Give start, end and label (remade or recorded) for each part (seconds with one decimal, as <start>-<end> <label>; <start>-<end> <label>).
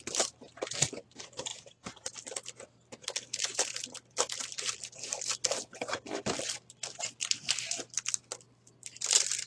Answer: 0.0-1.5 recorded; 1.5-2.0 remade; 2.0-9.5 recorded